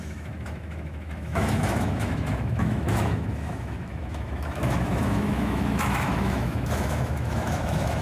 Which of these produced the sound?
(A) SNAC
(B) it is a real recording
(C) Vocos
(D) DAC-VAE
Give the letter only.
D